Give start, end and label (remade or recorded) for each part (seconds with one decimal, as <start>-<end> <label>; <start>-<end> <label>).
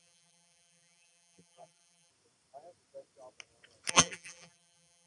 0.0-2.1 remade; 2.1-3.9 recorded; 3.9-5.1 remade